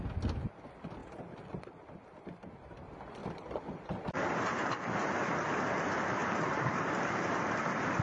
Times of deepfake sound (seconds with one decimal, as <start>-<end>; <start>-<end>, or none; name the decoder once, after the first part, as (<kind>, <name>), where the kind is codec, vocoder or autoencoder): 3.2-4.9 (vocoder, BigVGAN v2); 6.2-7.3